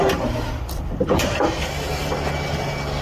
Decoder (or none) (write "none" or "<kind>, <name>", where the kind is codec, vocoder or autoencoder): none